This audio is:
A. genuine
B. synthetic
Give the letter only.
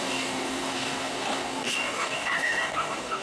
B